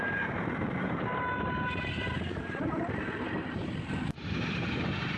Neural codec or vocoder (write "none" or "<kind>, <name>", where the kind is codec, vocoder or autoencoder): vocoder, BigVGAN v2